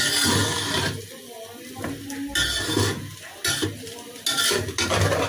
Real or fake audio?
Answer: real